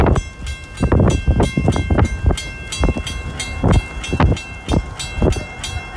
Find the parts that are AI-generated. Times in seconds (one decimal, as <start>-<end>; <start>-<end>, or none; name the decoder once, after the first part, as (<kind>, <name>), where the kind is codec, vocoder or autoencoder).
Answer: none